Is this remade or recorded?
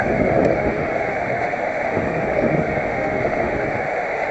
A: remade